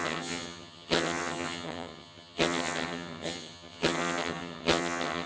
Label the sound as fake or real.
fake